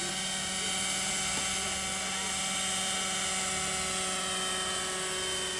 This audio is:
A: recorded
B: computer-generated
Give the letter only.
A